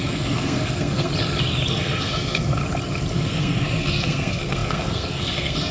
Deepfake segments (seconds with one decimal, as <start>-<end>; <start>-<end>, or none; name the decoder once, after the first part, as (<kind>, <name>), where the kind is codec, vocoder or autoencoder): 0.0-1.1 (codec, SNAC); 1.7-2.6; 3.1-5.7